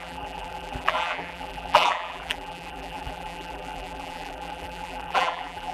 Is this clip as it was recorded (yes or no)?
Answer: no